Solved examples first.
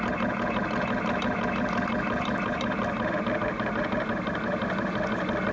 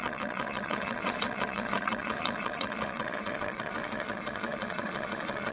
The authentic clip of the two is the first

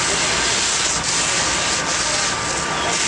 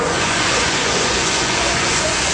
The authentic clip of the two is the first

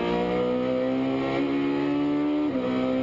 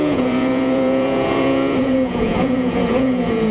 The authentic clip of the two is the first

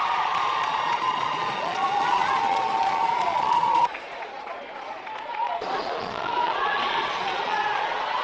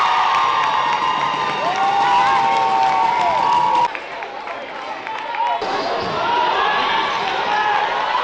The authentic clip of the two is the second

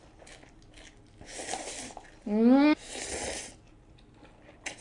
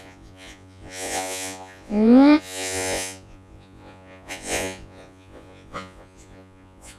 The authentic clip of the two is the first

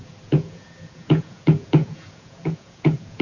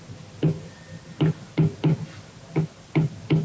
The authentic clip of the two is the second